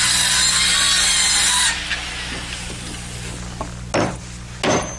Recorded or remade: recorded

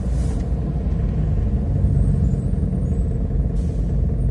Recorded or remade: recorded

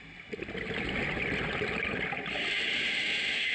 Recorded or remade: recorded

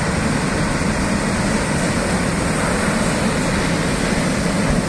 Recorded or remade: recorded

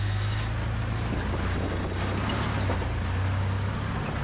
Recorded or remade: recorded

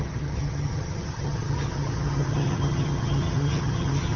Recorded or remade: remade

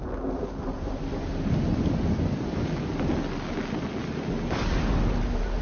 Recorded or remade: recorded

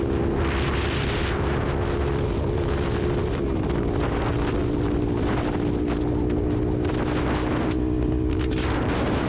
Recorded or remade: recorded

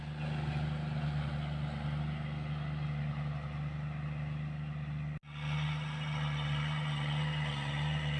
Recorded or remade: recorded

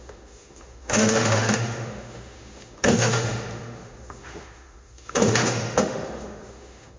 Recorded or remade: remade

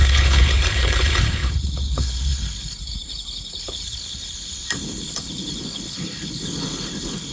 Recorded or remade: remade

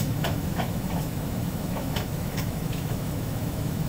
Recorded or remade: remade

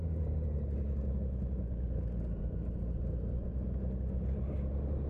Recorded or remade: recorded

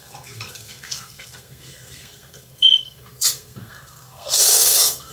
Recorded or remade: remade